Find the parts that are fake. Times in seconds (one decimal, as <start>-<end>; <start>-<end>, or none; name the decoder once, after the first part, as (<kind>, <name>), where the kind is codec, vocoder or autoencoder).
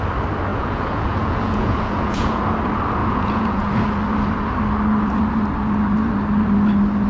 0.5-2.4 (vocoder, Vocos); 3.0-3.7